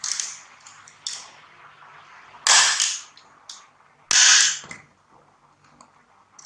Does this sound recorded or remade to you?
recorded